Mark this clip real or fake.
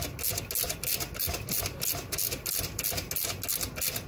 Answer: real